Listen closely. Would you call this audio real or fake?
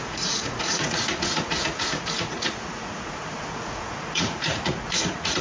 fake